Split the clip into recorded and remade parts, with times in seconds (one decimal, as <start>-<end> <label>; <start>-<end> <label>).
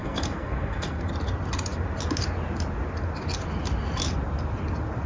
0.0-1.1 remade; 1.1-5.1 recorded